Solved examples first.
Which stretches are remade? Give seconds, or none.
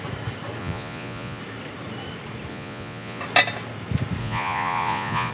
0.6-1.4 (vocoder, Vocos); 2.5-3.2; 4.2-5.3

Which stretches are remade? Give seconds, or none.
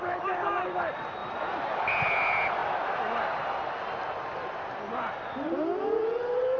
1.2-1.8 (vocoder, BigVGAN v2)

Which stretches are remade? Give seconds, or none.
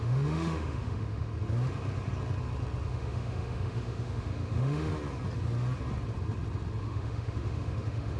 0.0-1.3 (autoencoder, DAC-VAE); 2.9-4.9; 6.8-8.2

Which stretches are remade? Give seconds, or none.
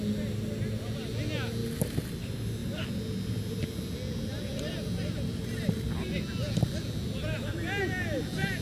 none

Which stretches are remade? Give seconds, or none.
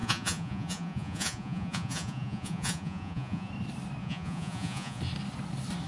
0.0-3.5 (vocoder, Vocos); 4.0-5.0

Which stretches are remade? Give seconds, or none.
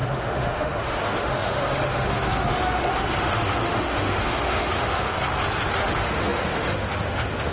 0.0-5.1 (autoencoder, DAC-VAE); 5.7-7.5